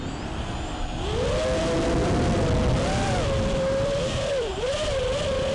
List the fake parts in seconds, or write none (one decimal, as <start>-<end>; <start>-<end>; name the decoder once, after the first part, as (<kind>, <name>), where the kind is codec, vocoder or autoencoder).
3.5-4.5 (vocoder, BigVGAN v2)